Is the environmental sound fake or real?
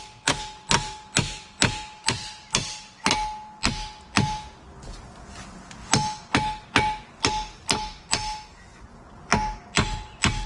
real